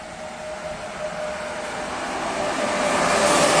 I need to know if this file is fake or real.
real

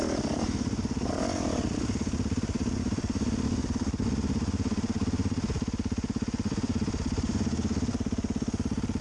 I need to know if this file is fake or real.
real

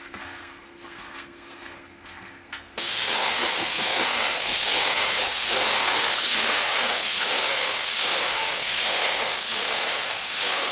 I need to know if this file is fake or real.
fake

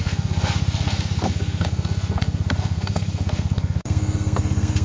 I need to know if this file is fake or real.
fake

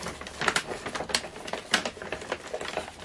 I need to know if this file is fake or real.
real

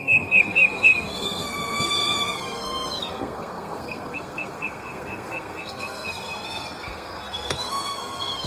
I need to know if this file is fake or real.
fake